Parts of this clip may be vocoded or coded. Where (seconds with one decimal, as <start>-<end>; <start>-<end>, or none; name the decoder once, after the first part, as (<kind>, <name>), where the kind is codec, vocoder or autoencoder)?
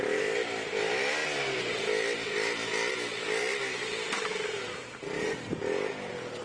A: none